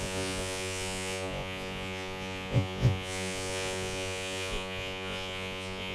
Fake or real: fake